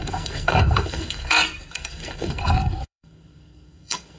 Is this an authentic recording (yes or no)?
no